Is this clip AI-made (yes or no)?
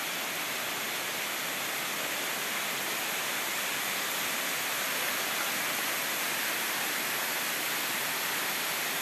no